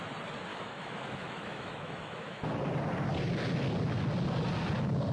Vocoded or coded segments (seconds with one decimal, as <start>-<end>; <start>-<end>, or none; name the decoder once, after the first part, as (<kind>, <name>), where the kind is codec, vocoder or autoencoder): 0.5-2.4 (autoencoder, DAC-VAE)